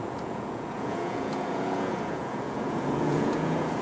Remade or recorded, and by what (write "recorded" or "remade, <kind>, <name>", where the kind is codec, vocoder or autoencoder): remade, vocoder, Vocos